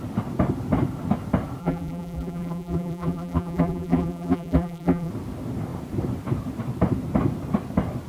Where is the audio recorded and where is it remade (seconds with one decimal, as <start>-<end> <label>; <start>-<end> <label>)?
0.0-1.6 recorded; 1.6-5.1 remade; 5.1-8.1 recorded